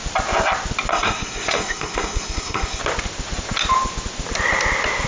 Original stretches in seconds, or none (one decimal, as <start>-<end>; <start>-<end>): 0.0-0.9; 2.8-5.1